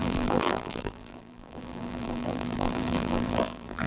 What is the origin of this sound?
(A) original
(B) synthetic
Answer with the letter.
B